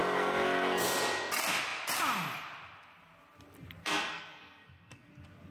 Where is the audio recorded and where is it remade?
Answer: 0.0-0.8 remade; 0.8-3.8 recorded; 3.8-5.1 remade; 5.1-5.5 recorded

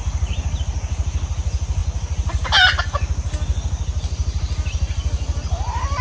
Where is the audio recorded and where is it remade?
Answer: 0.0-6.0 recorded

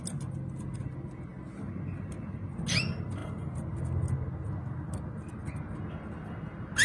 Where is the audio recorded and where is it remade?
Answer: 0.0-6.8 recorded

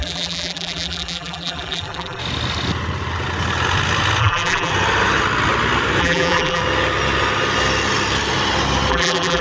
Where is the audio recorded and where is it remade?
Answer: 0.0-2.2 remade; 2.2-4.2 recorded; 4.2-4.7 remade; 4.7-6.0 recorded; 6.0-6.6 remade; 6.6-8.9 recorded; 8.9-9.4 remade

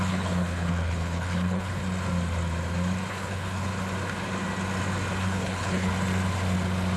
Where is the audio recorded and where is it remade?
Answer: 0.0-1.8 remade; 1.8-3.1 recorded; 3.1-3.7 remade; 3.7-5.2 recorded; 5.2-5.9 remade; 5.9-7.0 recorded

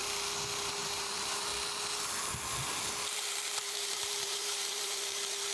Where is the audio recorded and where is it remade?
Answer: 0.0-0.8 recorded; 0.8-1.5 remade; 1.5-3.1 recorded; 3.1-5.5 remade